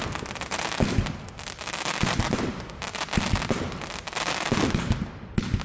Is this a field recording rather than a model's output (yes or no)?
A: yes